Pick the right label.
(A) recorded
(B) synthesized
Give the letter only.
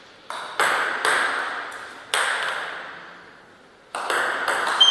A